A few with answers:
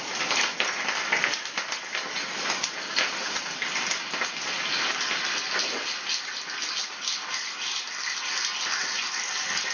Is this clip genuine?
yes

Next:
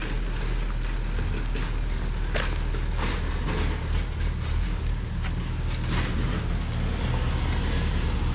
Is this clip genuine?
yes